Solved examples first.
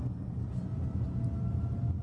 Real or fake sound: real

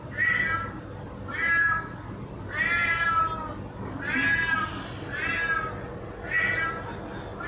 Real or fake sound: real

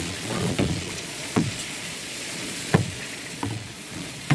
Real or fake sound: fake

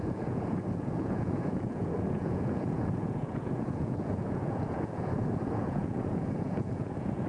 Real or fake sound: fake